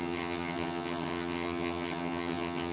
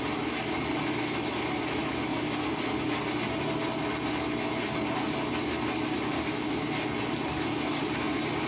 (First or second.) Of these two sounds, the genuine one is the second